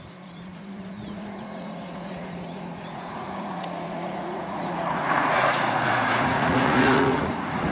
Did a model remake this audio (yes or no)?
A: yes